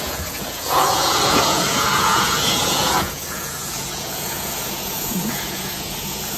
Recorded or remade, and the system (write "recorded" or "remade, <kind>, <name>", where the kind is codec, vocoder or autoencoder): remade, vocoder, Vocos